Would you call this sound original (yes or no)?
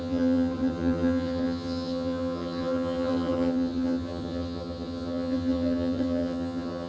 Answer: no